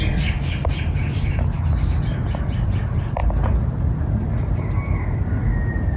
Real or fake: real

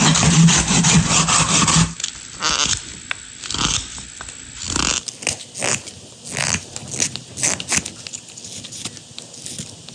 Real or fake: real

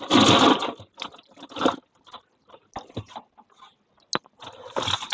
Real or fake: real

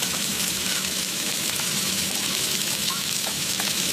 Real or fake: fake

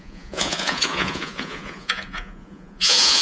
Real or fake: fake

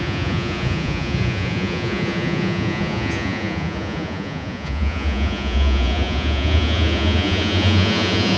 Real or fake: fake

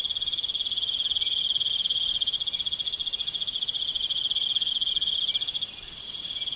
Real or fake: real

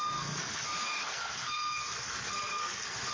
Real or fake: fake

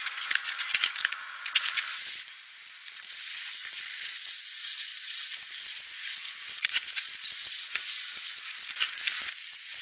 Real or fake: fake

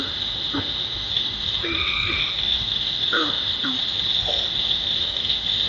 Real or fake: fake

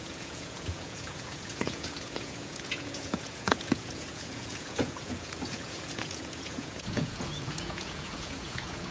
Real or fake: fake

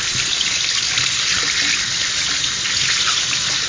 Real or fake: real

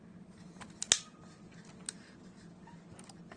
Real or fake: real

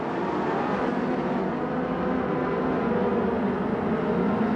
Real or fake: real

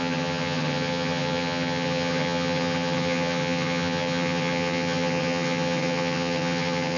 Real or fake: fake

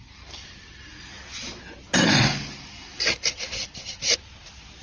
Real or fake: real